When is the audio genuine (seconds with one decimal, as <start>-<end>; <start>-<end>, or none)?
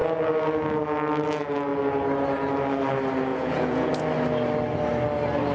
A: 0.0-3.3; 3.9-5.5